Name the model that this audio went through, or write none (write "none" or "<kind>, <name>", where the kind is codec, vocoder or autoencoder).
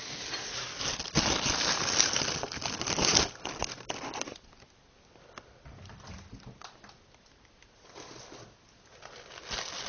none